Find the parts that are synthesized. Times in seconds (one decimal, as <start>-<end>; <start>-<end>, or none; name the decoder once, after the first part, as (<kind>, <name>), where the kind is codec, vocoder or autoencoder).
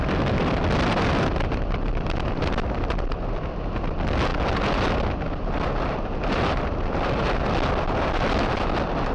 none